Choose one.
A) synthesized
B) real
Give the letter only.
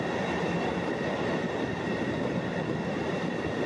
B